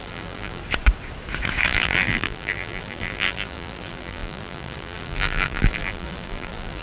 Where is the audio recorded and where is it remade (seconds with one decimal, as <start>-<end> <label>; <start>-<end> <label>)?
0.0-0.6 remade; 0.6-1.6 recorded; 1.6-6.8 remade